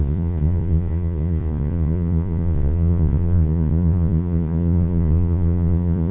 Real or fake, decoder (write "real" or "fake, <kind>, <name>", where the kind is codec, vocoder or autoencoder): fake, vocoder, Vocos